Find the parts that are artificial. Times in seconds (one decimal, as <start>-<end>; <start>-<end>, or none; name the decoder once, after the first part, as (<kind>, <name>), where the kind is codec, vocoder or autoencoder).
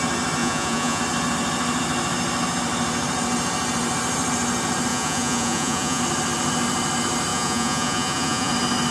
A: 0.4-1.0 (vocoder, Vocos); 4.9-6.0; 7.3-8.5